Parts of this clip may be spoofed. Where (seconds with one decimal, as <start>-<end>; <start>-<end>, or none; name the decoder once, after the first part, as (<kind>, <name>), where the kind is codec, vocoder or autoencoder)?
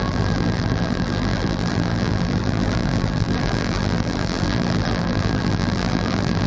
0.0-6.5 (vocoder, BigVGAN v2)